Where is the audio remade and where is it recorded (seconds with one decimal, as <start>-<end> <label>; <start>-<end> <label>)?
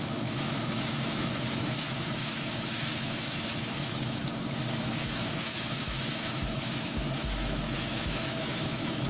0.0-4.2 remade; 4.2-4.8 recorded; 4.8-9.1 remade